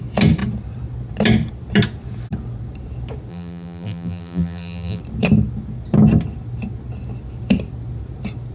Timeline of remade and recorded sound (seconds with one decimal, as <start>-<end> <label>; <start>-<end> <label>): 0.0-3.3 recorded; 3.3-5.0 remade; 5.0-8.5 recorded